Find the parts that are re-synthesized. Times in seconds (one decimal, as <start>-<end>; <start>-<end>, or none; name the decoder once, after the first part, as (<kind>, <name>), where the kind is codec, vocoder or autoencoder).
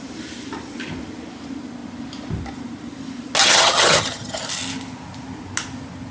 3.4-4.4 (vocoder, HiFi-GAN)